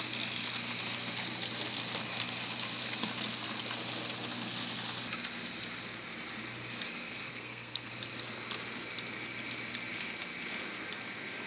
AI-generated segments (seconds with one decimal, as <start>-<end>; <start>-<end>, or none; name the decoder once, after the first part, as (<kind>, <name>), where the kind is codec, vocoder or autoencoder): 7.3-7.9 (codec, SNAC)